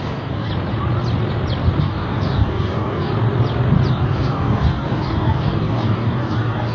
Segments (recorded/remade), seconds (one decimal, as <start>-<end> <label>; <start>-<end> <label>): 0.0-0.5 remade; 0.5-1.8 recorded; 1.8-3.1 remade; 3.1-3.9 recorded; 3.9-6.7 remade